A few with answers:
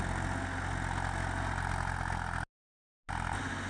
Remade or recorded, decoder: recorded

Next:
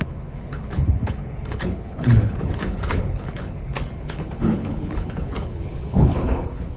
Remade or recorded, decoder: remade, codec, HILCodec